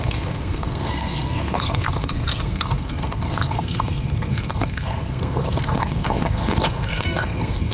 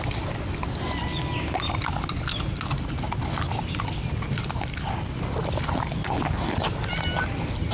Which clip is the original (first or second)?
second